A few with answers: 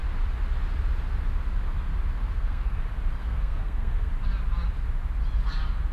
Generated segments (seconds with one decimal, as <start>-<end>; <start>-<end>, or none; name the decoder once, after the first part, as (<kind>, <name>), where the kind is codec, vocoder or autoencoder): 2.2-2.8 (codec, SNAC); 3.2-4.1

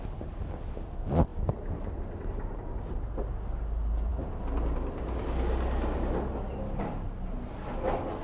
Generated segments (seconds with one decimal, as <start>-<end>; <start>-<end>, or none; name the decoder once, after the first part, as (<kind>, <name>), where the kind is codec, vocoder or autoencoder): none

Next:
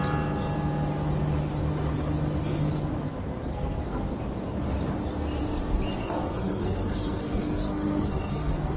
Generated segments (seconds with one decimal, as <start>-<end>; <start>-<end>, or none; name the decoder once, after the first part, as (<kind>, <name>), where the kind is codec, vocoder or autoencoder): 3.5-4.0 (codec, SNAC); 6.0-8.8

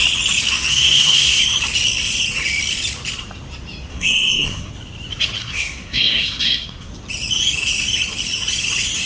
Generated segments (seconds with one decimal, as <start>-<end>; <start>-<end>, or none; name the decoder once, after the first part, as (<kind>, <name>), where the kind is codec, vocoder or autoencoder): 0.7-1.4 (codec, SNAC); 3.9-4.7; 5.4-6.9